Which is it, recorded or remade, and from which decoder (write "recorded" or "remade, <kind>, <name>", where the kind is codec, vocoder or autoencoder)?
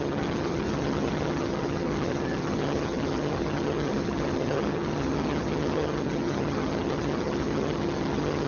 remade, vocoder, HiFi-GAN